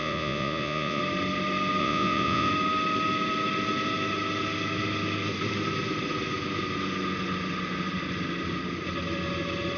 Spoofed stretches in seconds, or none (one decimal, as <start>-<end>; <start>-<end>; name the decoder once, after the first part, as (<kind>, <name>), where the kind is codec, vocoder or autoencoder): 0.0-1.0 (vocoder, Vocos); 1.8-2.5